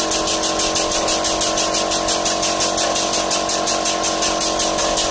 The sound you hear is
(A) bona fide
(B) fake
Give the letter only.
A